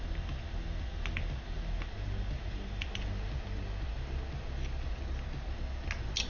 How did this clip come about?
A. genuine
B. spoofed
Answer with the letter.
A